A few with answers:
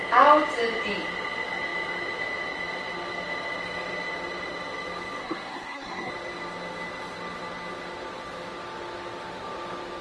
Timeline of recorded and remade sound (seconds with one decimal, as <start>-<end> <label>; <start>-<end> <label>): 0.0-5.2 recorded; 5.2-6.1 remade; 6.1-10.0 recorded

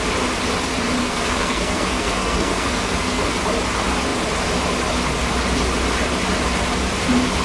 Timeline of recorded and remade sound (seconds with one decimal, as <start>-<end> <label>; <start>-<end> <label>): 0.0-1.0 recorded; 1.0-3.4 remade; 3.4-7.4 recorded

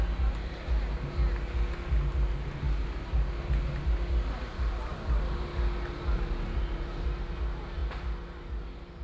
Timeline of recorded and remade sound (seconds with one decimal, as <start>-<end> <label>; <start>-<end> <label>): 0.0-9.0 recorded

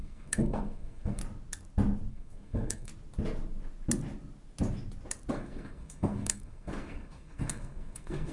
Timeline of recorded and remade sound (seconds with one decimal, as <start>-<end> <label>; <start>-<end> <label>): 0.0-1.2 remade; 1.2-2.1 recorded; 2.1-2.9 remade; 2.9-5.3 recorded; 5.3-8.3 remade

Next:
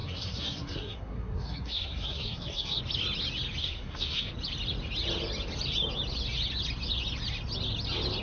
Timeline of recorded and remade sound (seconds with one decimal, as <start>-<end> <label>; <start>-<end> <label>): 0.0-2.8 remade; 2.8-3.6 recorded; 3.6-4.3 remade; 4.3-8.2 recorded

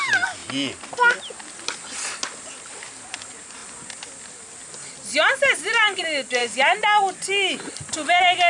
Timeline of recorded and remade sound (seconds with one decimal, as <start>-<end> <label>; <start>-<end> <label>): 0.0-8.5 recorded

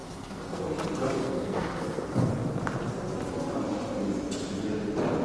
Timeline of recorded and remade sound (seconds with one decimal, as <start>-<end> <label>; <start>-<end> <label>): 0.0-0.6 remade; 0.6-1.2 recorded; 1.2-2.3 remade; 2.3-5.2 recorded